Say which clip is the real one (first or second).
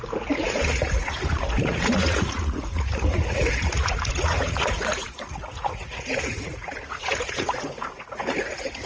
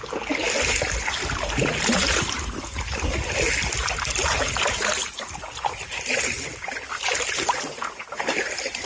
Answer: second